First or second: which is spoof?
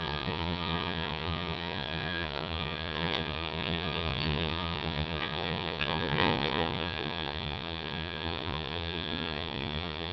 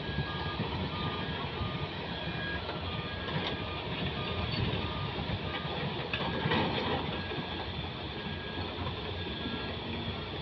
first